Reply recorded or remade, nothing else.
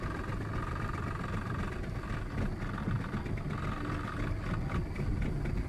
recorded